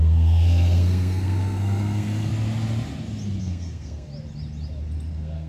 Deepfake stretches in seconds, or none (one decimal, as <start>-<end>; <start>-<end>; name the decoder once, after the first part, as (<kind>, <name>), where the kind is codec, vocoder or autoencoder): 0.0-2.3 (codec, SNAC); 3.4-4.1; 5.1-5.5